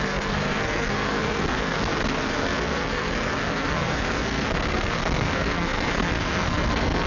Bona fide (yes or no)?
no